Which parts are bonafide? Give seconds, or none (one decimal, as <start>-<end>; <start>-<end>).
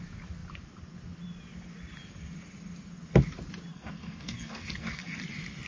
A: 0.0-3.7; 5.2-5.7